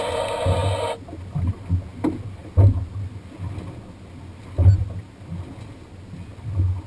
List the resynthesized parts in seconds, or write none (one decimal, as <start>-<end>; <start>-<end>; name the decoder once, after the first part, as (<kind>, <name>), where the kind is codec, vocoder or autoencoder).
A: none